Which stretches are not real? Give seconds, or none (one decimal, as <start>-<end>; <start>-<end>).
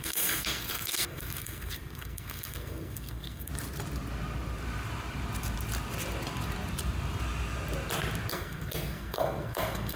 0.0-3.5; 8.3-10.0